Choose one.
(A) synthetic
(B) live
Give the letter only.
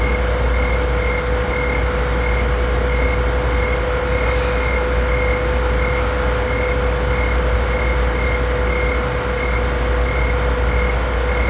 B